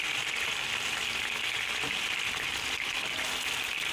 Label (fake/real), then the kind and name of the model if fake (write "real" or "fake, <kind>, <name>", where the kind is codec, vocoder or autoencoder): real